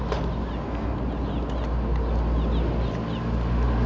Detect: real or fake real